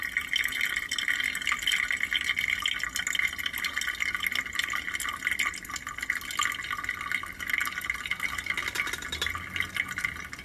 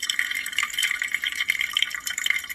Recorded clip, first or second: first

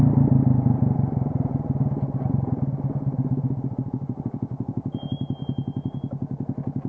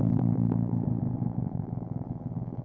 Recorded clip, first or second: first